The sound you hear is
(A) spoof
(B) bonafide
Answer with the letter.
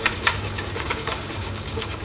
A